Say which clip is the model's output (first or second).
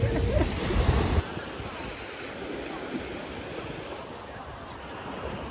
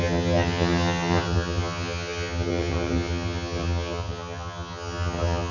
second